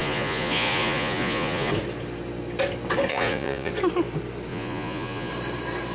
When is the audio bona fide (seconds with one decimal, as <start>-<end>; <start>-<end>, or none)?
1.7-3.1; 3.7-4.5; 5.3-5.9

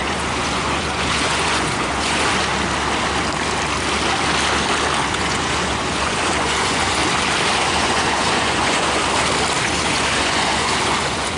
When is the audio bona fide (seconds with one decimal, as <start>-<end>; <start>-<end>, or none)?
2.5-5.1; 7.0-7.6; 9.0-9.6

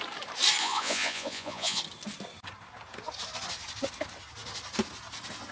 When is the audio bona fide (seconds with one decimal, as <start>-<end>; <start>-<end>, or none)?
0.0-0.6; 1.8-5.5

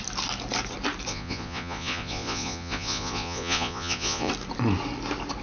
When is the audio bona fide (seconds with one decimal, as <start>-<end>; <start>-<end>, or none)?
0.0-1.1; 4.3-5.4